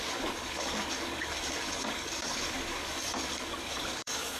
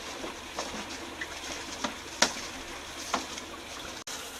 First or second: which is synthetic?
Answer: first